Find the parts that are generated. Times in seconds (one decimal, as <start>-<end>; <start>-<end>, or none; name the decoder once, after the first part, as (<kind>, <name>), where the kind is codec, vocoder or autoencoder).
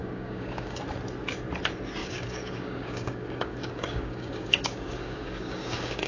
0.0-0.8 (codec, DAC); 2.0-6.1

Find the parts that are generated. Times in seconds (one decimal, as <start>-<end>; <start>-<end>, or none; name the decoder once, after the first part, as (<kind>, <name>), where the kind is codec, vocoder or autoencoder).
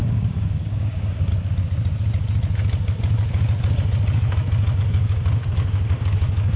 0.0-1.3 (codec, DAC); 4.8-6.6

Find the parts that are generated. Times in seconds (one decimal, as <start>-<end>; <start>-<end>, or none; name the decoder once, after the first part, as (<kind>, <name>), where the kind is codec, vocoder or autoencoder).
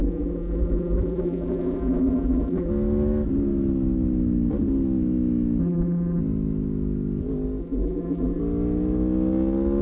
0.0-2.7 (vocoder, BigVGAN v2); 5.6-6.2; 7.6-8.4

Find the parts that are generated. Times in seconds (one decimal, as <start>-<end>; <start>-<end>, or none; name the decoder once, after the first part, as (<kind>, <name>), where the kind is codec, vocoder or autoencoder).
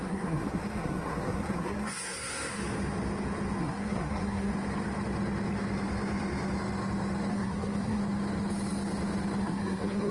0.0-2.6 (codec, SNAC); 3.6-4.5; 7.3-8.0; 9.4-10.1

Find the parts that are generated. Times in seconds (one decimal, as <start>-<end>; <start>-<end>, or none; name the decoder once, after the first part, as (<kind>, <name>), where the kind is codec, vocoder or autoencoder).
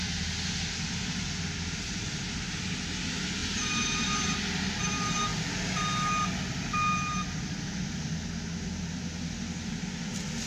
none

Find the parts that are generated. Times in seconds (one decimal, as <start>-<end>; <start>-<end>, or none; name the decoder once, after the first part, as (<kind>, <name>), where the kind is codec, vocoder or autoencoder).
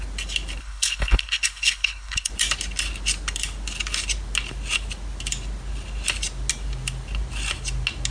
0.6-2.3 (codec, HILCodec)